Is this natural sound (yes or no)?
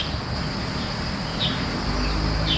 yes